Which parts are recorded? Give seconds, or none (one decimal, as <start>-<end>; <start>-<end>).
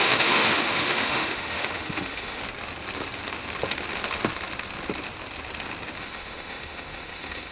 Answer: 2.4-6.0